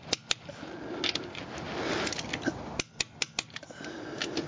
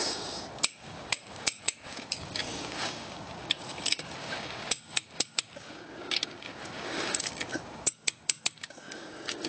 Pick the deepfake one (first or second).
second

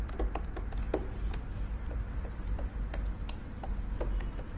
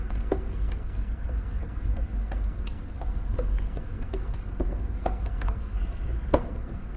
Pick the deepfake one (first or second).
second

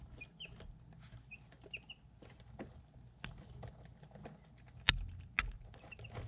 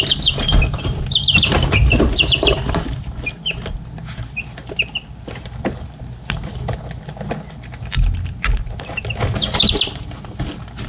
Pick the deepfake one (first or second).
second